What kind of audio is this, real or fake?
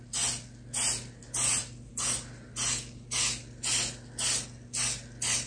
real